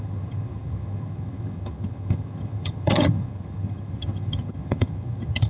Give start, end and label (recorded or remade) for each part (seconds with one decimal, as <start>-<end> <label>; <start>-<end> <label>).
0.0-5.5 remade